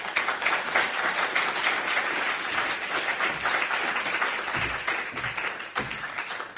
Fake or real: real